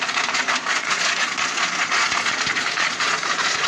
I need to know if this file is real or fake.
fake